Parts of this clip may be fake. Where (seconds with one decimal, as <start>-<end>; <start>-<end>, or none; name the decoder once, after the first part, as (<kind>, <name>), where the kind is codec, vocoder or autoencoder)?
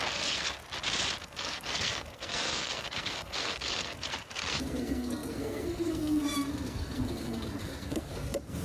0.0-0.6 (codec, SNAC); 1.2-8.6